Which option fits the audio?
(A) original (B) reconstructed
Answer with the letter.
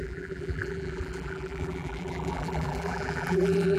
B